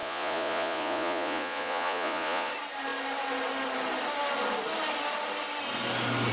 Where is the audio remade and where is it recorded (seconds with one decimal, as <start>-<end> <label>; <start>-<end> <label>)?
0.0-2.5 remade; 2.5-6.3 recorded